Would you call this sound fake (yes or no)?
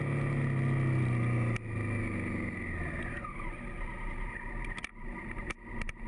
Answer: no